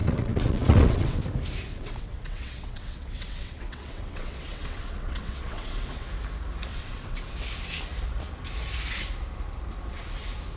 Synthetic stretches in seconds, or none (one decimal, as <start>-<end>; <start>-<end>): 0.0-1.2; 1.7-6.1; 6.7-7.3